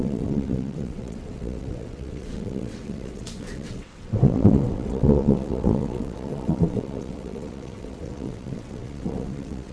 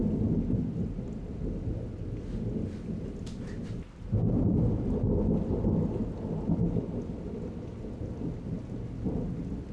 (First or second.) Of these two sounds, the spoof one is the first